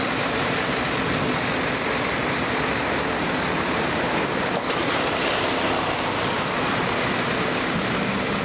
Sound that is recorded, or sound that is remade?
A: recorded